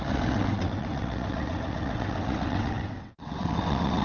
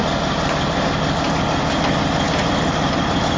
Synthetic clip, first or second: first